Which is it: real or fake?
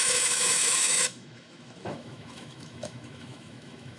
fake